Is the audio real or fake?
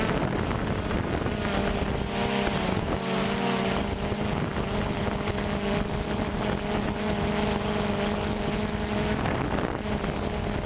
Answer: real